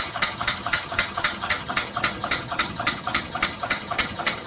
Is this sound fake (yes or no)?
yes